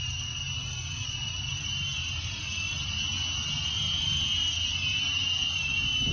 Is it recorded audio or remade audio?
remade